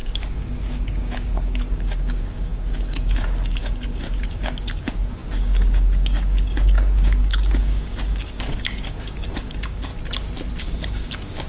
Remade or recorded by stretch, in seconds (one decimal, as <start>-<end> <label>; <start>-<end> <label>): 0.0-9.9 remade; 9.9-10.6 recorded; 10.6-11.5 remade